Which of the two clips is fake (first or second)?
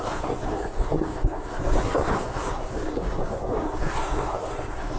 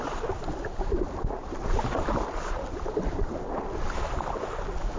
first